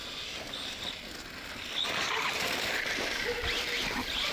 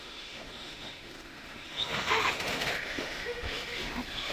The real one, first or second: first